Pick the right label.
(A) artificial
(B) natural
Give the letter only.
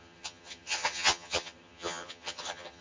A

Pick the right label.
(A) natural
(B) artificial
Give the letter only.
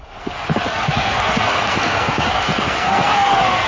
B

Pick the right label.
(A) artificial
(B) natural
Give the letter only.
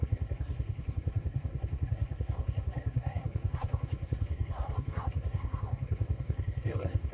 A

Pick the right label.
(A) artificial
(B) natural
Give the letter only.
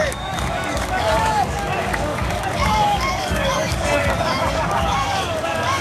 A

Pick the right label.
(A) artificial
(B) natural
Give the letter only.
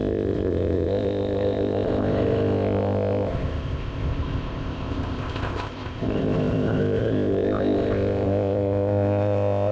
A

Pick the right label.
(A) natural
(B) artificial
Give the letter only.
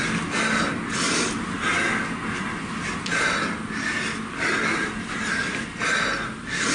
A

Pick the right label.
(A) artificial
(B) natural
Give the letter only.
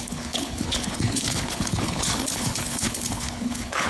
A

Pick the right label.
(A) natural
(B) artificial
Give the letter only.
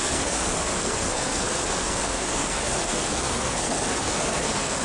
B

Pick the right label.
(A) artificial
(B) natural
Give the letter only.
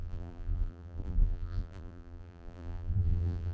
A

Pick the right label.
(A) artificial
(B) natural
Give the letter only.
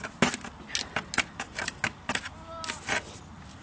B